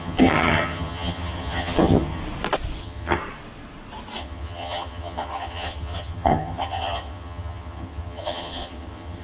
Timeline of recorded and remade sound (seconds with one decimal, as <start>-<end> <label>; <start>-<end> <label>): 0.0-2.2 remade; 2.2-2.8 recorded; 2.8-3.2 remade; 3.2-4.2 recorded; 4.2-9.2 remade

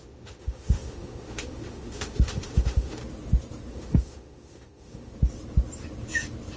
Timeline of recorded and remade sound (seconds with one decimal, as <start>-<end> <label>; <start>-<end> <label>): 0.0-3.0 remade; 3.0-3.7 recorded; 3.7-5.1 remade; 5.1-6.6 recorded

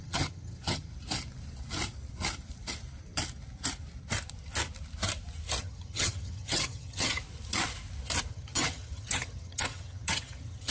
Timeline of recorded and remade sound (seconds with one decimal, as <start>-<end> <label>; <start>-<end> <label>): 0.0-0.9 remade; 0.9-5.6 recorded; 5.6-7.2 remade; 7.2-8.3 recorded; 8.3-10.7 remade

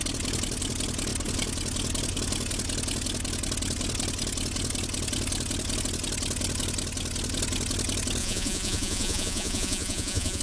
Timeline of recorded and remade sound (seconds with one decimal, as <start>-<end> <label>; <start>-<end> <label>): 0.0-8.2 recorded; 8.2-10.4 remade